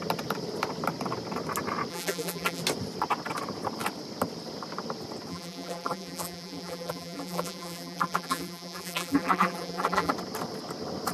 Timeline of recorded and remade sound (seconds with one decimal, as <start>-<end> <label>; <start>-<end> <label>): 0.0-1.9 recorded; 1.9-2.6 remade; 2.6-5.3 recorded; 5.3-10.1 remade; 10.1-11.1 recorded